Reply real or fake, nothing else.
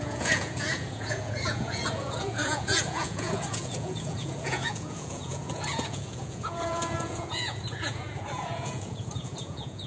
fake